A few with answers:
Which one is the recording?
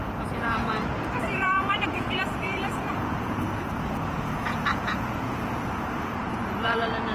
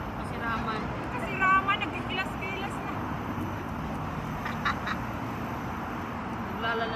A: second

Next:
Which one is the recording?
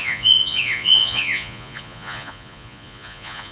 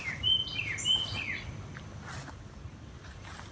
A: second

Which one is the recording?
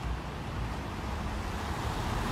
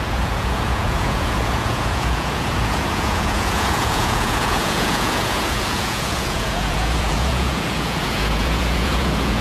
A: first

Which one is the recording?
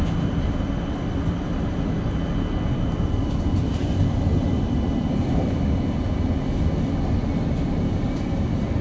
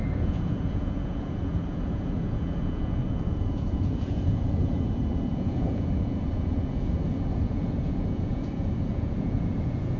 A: first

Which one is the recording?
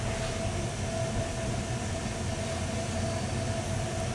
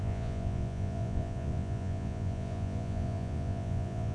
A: first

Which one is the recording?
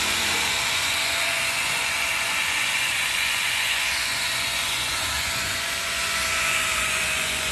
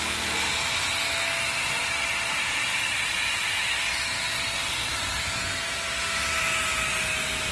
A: second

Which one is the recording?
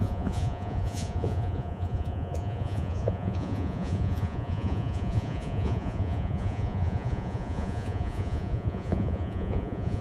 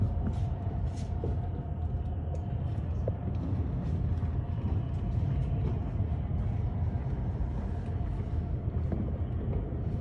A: second